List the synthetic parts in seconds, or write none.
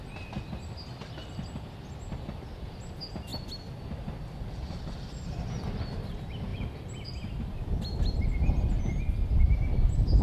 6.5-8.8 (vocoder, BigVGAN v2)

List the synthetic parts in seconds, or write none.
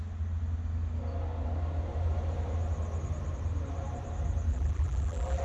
4.5-5.4 (vocoder, BigVGAN v2)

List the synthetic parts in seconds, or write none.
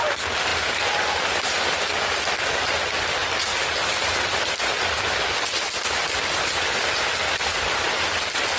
0.5-2.6 (vocoder, BigVGAN v2); 3.5-5.2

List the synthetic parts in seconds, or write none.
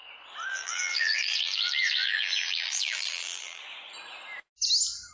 0.5-3.6 (vocoder, BigVGAN v2)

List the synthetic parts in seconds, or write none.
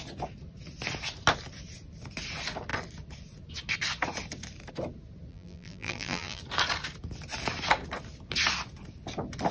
5.3-6.4 (vocoder, BigVGAN v2)